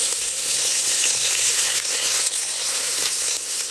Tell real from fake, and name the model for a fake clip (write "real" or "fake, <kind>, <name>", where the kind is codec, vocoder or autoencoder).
fake, codec, SNAC